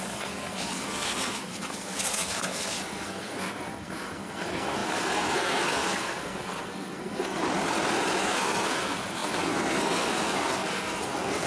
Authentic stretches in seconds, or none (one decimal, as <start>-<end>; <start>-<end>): 7.4-8.2